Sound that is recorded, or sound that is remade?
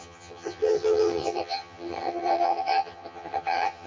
remade